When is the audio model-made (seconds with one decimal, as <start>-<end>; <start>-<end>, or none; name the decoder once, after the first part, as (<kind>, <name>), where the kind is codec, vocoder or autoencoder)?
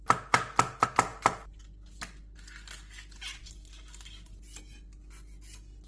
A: none